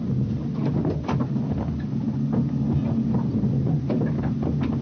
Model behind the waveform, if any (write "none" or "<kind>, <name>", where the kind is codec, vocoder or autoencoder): none